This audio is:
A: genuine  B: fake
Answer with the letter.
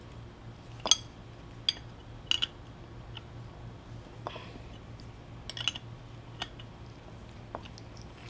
A